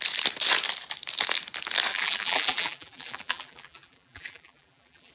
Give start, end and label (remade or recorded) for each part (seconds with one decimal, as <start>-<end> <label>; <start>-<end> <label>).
0.0-1.9 recorded; 1.9-5.1 remade